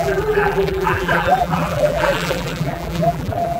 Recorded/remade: remade